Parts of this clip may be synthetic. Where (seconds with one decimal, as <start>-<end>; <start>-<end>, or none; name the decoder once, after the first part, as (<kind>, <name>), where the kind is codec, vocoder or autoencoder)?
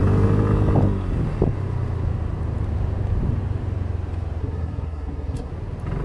4.4-5.5 (codec, SNAC)